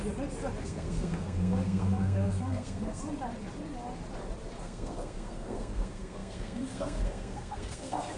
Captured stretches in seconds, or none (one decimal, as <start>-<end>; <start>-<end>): 0.0-0.6; 3.0-4.6